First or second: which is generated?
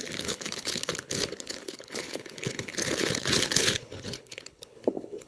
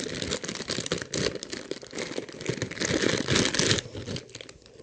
first